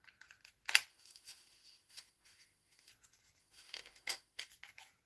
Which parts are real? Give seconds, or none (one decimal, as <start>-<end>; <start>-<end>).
0.0-0.9; 2.9-3.4; 4.5-5.1